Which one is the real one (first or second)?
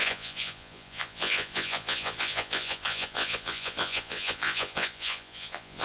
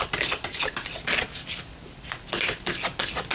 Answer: second